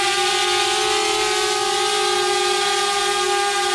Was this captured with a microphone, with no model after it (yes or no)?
yes